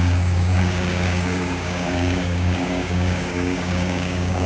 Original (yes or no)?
no